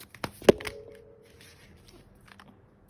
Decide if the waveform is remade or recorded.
recorded